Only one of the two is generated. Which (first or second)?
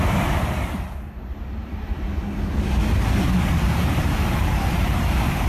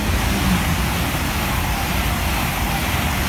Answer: first